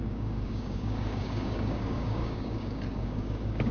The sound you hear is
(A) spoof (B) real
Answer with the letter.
A